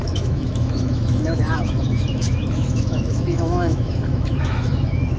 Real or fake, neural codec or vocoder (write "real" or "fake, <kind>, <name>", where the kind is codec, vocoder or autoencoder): fake, autoencoder, DAC-VAE